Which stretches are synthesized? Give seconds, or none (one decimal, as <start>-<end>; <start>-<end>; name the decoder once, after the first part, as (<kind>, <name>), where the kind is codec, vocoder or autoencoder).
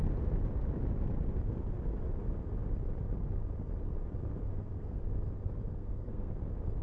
4.5-5.0 (codec, SNAC); 5.8-6.3